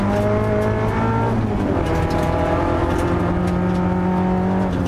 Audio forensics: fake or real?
real